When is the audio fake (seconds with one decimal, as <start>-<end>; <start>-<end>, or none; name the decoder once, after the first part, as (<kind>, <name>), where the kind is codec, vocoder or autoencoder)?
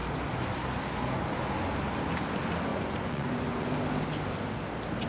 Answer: 2.7-3.7 (vocoder, Vocos)